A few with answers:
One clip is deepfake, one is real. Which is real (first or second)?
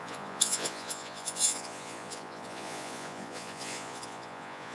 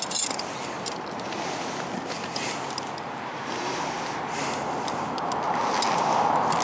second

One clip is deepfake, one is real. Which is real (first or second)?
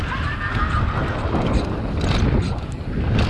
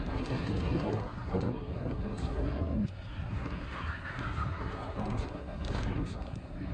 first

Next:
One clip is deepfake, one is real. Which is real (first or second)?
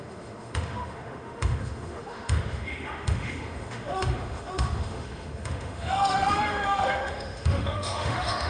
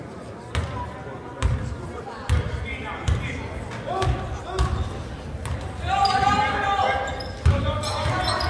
second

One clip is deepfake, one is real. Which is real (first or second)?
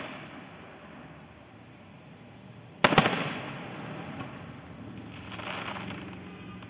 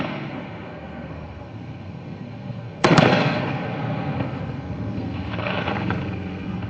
first